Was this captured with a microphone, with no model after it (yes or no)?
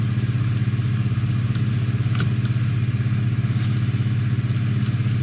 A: yes